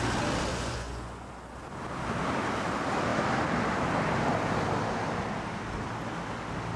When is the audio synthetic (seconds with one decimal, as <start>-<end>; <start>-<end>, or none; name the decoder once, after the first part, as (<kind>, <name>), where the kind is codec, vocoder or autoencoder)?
0.5-1.3 (vocoder, Vocos)